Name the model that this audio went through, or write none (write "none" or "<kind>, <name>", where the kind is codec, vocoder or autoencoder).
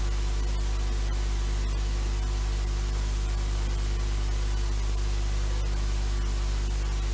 none